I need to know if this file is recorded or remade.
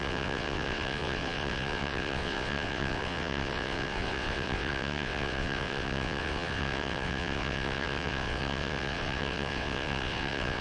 remade